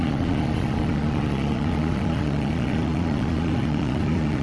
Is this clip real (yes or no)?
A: no